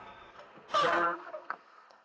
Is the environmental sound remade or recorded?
remade